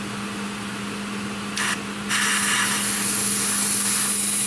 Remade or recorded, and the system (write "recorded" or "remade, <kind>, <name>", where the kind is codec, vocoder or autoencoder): recorded